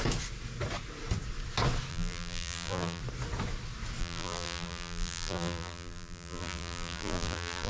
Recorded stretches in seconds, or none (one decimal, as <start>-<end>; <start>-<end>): 0.0-1.9; 3.0-4.0